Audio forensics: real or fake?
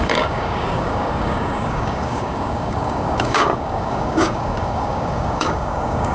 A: fake